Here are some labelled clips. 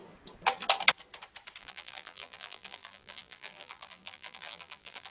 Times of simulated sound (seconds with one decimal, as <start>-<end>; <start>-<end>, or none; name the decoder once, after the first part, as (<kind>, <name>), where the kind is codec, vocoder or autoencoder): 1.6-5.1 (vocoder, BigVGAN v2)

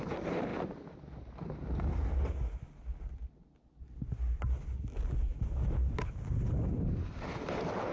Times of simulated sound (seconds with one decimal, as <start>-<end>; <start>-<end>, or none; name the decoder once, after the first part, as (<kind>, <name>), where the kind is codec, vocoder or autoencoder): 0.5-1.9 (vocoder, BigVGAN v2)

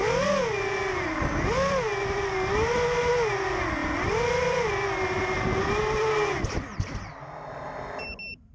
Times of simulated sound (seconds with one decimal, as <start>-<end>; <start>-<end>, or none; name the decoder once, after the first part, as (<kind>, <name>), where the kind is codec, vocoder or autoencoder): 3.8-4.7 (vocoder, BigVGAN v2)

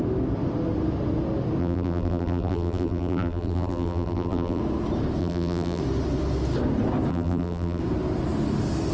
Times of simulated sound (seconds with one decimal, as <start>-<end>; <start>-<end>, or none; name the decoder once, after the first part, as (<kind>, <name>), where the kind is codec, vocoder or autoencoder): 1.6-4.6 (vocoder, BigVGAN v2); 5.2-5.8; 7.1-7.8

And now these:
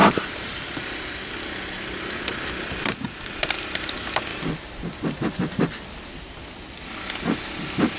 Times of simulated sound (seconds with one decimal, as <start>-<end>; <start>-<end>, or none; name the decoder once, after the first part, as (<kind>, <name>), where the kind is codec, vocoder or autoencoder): 0.0-0.8 (vocoder, BigVGAN v2); 4.3-5.8